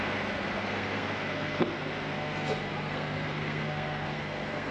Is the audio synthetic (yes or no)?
yes